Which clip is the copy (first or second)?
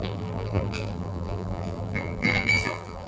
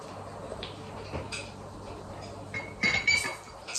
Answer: first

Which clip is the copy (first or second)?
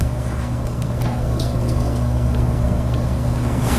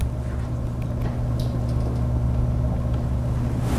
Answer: first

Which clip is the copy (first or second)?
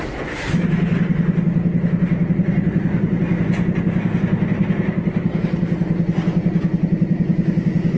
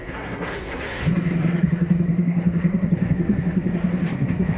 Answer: second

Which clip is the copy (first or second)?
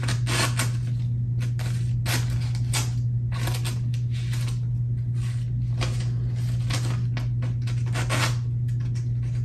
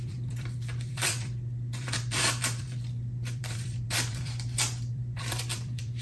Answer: second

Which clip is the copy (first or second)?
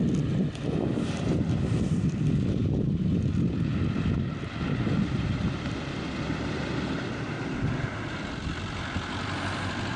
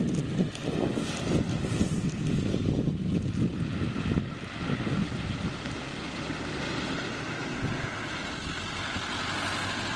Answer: first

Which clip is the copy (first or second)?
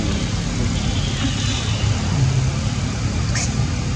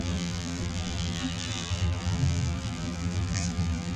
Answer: second